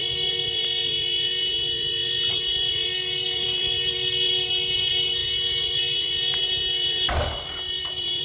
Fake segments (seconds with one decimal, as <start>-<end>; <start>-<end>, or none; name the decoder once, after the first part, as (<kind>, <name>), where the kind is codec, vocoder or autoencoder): none